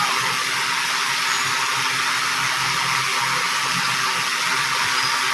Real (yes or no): yes